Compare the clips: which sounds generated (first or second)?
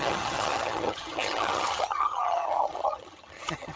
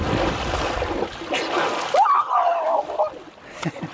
first